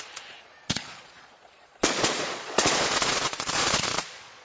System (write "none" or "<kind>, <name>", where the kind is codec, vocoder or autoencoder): vocoder, Vocos